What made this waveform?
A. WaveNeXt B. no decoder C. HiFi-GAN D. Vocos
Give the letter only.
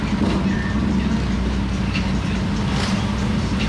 B